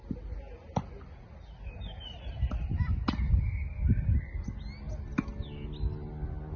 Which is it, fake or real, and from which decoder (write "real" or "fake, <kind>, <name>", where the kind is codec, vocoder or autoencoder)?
real